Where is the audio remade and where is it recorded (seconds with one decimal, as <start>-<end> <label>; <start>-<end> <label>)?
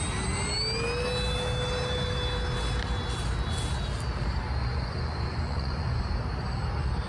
0.0-4.6 recorded; 4.6-6.0 remade; 6.0-7.1 recorded